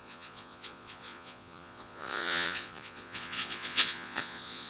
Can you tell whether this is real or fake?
fake